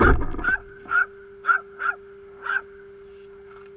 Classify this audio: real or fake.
real